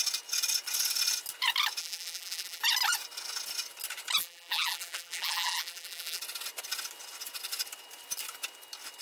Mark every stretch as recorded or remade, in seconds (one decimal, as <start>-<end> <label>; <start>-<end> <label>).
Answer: 0.0-1.8 recorded; 1.8-2.6 remade; 2.6-4.2 recorded; 4.2-6.2 remade; 6.2-9.0 recorded